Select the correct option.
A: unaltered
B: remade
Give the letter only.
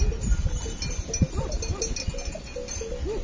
A